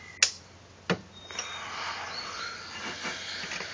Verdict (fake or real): real